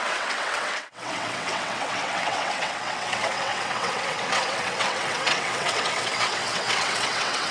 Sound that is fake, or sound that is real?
fake